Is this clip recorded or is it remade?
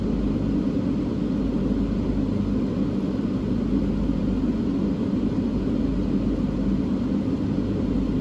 recorded